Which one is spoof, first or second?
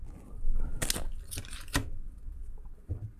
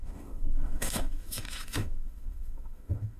second